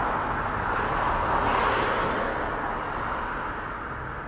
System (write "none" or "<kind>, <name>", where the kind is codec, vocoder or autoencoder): none